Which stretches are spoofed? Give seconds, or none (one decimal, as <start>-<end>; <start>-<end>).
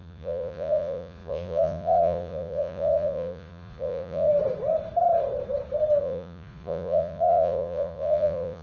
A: 0.0-4.3; 6.0-8.6